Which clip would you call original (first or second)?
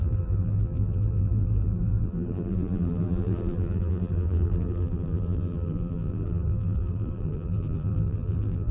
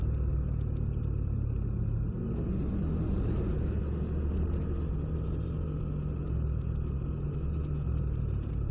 second